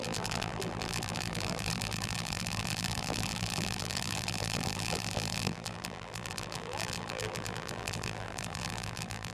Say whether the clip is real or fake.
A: fake